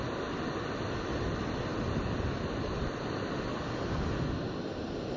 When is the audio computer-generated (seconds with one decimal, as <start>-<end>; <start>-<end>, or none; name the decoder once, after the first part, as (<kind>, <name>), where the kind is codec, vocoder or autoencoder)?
none